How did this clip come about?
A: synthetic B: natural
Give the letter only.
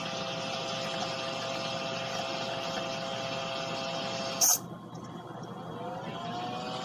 B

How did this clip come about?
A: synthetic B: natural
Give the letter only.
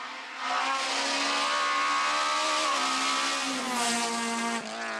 B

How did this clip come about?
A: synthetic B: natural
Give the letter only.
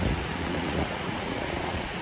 A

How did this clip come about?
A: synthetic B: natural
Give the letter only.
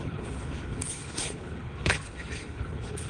A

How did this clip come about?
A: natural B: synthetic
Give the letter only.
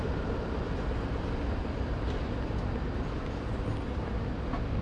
A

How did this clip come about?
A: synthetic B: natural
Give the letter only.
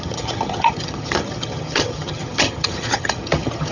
A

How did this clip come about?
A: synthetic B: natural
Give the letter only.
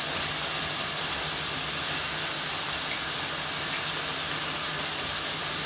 B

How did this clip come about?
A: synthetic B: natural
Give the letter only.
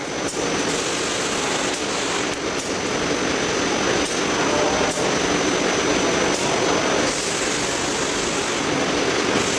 B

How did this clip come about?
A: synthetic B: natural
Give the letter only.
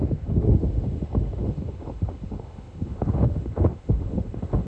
A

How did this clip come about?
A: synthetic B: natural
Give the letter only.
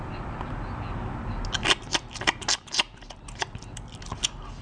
B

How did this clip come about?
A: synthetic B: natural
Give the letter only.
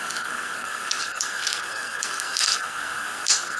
A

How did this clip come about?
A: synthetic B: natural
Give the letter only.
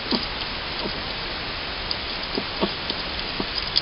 B